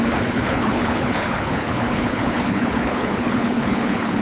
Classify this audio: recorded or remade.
remade